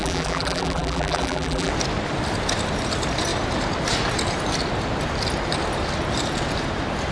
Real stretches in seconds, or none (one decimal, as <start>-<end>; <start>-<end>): 1.7-7.1